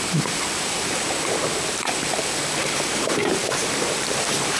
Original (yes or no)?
no